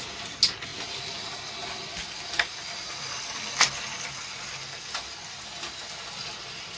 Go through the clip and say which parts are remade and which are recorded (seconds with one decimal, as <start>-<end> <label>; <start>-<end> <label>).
0.0-6.8 recorded